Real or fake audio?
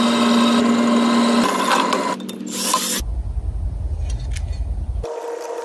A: real